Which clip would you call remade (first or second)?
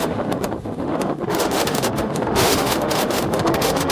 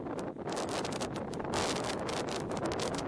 first